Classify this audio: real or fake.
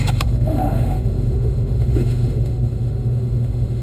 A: fake